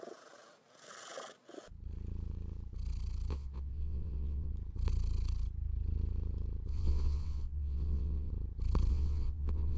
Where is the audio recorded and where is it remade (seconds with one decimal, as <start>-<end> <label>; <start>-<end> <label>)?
0.0-3.3 recorded; 3.3-4.5 remade; 4.5-6.7 recorded; 6.7-8.3 remade; 8.3-8.9 recorded; 8.9-9.8 remade